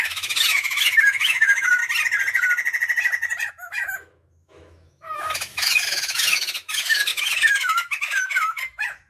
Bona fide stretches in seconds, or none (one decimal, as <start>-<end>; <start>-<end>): 1.8-3.5